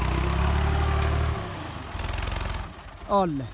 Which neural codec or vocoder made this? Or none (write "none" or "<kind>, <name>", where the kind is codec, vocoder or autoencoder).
none